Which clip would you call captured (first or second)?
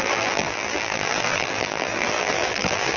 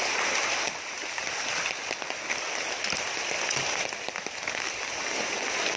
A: second